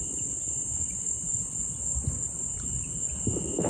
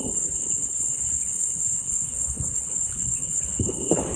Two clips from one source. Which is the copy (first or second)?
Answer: second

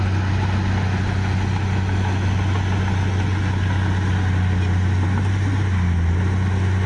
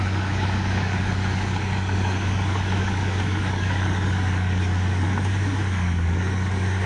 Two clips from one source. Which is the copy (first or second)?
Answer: second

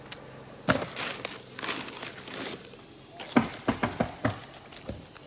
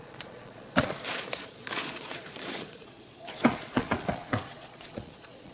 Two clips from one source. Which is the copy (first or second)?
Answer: second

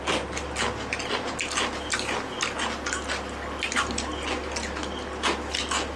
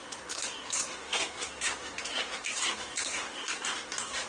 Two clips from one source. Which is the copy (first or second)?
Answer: second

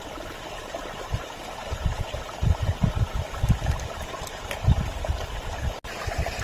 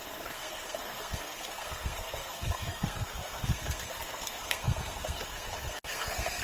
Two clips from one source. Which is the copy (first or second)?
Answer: second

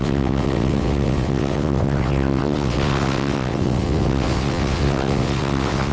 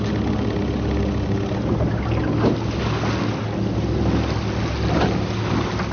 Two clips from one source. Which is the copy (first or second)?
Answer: first